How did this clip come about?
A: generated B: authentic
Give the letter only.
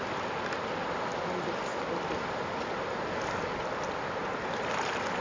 B